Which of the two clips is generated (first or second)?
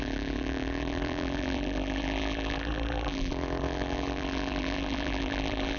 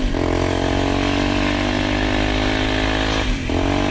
first